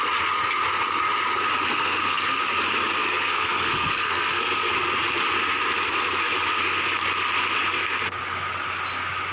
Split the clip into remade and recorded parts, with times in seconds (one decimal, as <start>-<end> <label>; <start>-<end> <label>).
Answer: 0.0-1.7 recorded; 1.7-2.4 remade; 2.4-3.0 recorded; 3.0-4.7 remade; 4.7-9.3 recorded